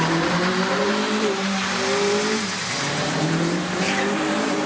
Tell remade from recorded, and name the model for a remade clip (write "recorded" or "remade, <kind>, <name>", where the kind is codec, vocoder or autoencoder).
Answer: remade, vocoder, BigVGAN v2